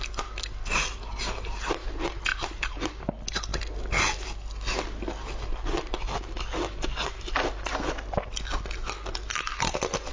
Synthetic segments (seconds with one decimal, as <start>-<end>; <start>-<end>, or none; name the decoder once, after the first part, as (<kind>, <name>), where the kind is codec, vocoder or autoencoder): 2.3-3.1 (vocoder, BigVGAN v2)

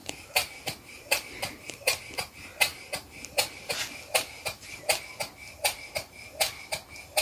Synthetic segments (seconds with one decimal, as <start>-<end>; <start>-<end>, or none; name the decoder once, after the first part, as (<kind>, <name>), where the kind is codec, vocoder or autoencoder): 0.0-2.3 (vocoder, BigVGAN v2)